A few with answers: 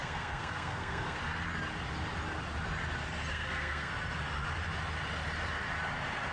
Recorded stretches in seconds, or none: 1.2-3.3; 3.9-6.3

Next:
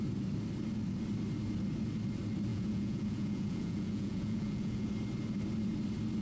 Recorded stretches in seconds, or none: 0.0-2.5; 4.9-6.2

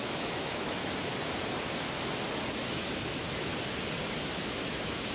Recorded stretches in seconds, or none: 0.8-2.5; 3.5-4.2

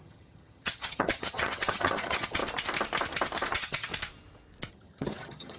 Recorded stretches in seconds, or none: 2.4-3.5; 3.9-4.7

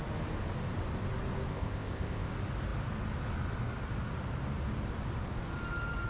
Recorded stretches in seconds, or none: 0.0-1.5; 2.3-6.1

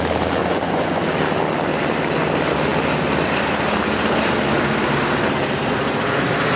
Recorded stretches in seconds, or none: 0.0-0.4; 1.0-6.6

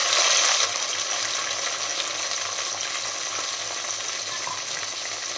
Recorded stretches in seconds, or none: 0.0-5.4